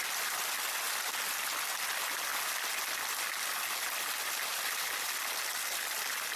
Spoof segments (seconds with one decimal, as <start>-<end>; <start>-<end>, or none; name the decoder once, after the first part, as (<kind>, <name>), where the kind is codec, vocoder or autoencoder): none